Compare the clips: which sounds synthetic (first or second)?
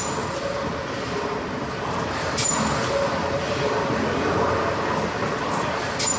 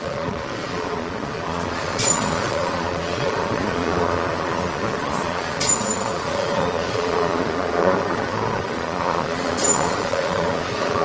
second